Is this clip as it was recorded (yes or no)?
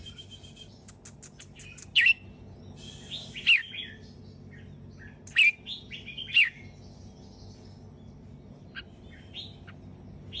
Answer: yes